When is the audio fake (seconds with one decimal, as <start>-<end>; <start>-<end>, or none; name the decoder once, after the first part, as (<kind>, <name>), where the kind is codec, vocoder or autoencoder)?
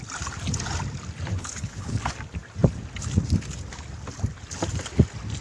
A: 1.3-2.0 (codec, HILCodec)